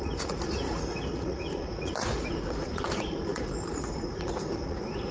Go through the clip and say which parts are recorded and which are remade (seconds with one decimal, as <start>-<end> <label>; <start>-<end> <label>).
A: 0.0-5.1 remade